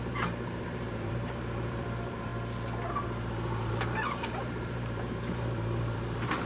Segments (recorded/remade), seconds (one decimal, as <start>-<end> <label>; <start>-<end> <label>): 0.0-2.3 remade; 2.3-2.9 recorded; 2.9-6.5 remade